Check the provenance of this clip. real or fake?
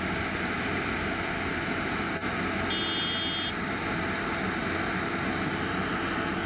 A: real